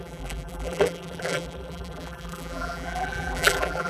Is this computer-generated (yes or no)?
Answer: yes